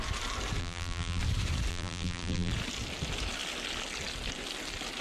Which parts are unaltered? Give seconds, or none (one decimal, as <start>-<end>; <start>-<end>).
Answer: 0.0-0.6; 1.2-1.7; 2.5-5.0